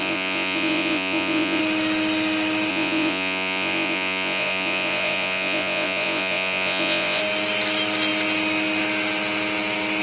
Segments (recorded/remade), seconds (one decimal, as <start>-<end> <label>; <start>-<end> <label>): 0.0-1.6 remade; 1.6-2.7 recorded; 2.7-7.2 remade; 7.2-10.0 recorded